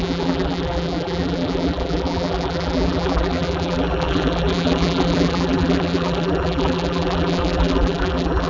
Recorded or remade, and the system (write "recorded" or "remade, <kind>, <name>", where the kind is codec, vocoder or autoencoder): remade, vocoder, BigVGAN v2